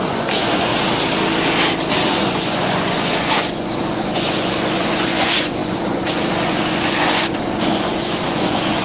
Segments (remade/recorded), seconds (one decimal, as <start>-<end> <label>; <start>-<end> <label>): 0.0-0.7 remade; 0.7-2.0 recorded; 2.0-8.8 remade